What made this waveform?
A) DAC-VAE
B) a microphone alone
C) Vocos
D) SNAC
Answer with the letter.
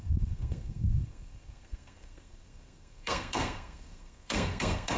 D